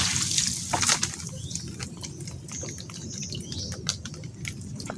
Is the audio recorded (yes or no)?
yes